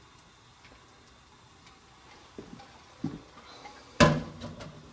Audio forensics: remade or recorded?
recorded